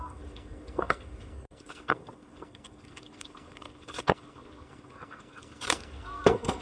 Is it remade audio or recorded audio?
remade